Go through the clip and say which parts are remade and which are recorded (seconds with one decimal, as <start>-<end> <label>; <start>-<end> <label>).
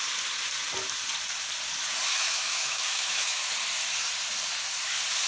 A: 0.0-2.1 recorded; 2.1-3.5 remade; 3.5-5.3 recorded